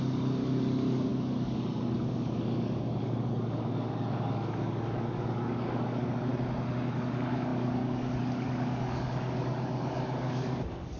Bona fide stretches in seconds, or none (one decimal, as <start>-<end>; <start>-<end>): 6.3-6.9